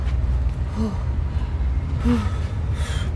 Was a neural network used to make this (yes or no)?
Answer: no